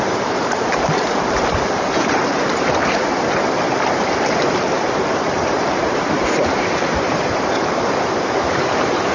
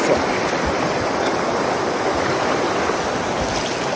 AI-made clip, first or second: first